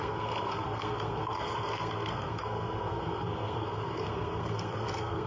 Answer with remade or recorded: remade